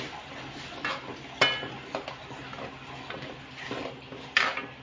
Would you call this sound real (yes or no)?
yes